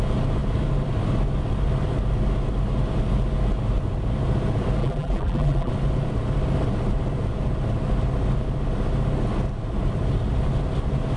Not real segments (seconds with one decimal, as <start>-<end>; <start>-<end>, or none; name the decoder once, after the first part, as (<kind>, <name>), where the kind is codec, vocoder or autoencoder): 4.8-5.7 (vocoder, BigVGAN v2)